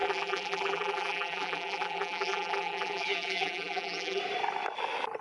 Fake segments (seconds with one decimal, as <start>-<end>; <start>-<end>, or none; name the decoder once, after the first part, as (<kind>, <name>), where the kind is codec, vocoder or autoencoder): 0.0-4.2 (vocoder, BigVGAN v2)